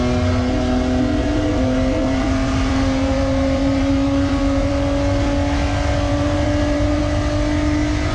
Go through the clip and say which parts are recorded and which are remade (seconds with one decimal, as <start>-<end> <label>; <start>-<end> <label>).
0.0-1.2 recorded; 1.2-4.7 remade; 4.7-6.1 recorded; 6.1-7.0 remade; 7.0-8.1 recorded